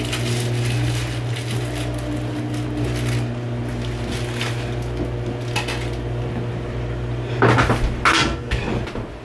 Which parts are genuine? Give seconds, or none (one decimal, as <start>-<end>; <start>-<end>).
0.0-8.1; 8.7-9.2